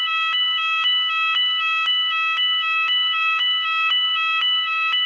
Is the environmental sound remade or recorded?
remade